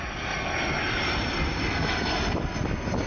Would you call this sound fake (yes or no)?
no